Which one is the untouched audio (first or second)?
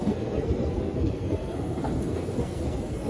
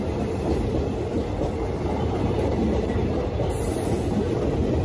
second